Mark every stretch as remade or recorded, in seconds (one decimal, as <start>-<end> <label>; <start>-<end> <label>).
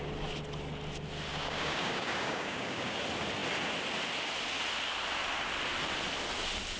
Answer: 0.0-1.3 recorded; 1.3-3.0 remade; 3.0-6.8 recorded